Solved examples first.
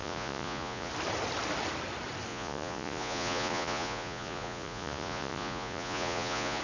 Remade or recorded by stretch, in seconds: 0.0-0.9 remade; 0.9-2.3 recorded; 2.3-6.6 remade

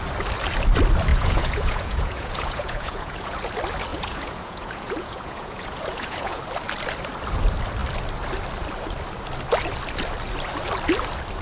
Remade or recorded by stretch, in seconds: 0.0-1.1 recorded; 1.1-3.5 remade; 3.5-3.9 recorded; 3.9-6.4 remade; 6.4-11.4 recorded

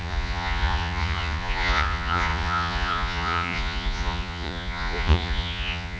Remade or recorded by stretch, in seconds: 0.0-6.0 remade